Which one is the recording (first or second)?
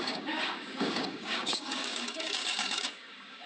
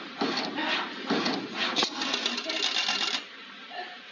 second